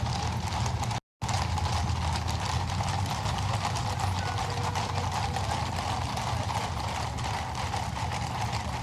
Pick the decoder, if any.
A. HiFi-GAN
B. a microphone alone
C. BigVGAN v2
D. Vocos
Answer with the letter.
B